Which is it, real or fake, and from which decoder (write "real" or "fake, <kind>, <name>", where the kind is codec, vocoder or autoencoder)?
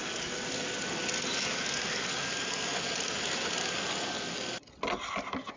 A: real